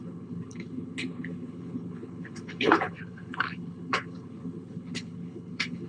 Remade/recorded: remade